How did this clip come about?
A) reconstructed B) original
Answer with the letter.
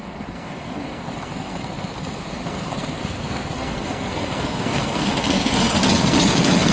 A